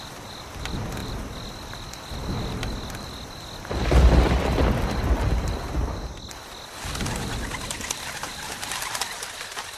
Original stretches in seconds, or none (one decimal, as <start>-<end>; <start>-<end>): 0.0-9.8